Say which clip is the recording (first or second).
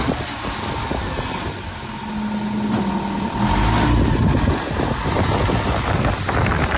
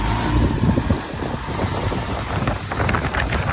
first